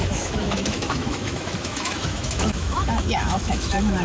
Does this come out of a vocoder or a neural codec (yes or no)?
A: yes